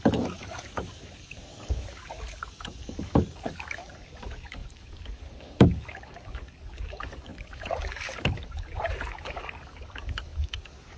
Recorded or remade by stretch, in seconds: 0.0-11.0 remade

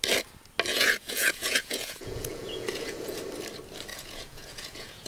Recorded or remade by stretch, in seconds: 0.0-0.7 recorded; 0.7-3.2 remade; 3.2-3.9 recorded; 3.9-5.1 remade

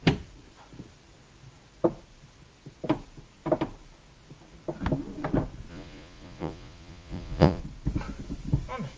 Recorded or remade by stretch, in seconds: 0.0-5.7 recorded; 5.7-7.6 remade; 7.6-9.0 recorded